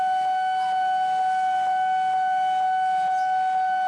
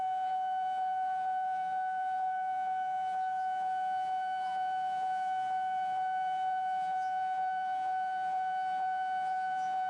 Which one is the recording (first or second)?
first